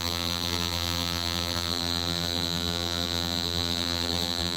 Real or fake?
fake